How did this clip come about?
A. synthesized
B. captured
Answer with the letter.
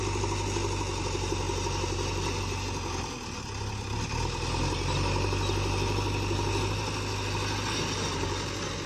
B